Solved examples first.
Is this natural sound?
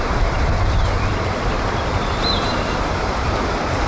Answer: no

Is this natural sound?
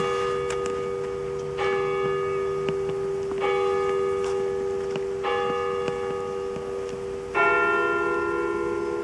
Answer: yes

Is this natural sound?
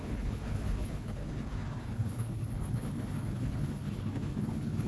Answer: no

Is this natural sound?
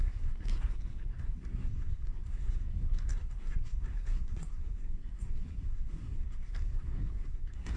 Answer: no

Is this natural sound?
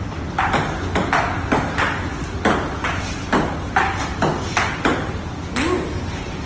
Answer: yes